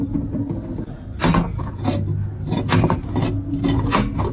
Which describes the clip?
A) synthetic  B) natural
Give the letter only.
B